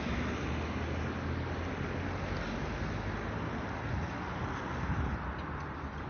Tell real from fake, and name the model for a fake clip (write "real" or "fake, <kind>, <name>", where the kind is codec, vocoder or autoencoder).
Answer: real